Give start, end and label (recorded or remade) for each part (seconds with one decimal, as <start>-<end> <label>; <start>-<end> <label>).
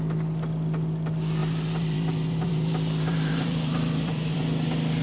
0.0-1.4 recorded; 1.4-4.4 remade; 4.4-5.0 recorded